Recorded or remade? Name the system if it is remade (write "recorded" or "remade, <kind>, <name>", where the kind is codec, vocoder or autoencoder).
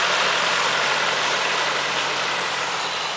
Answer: recorded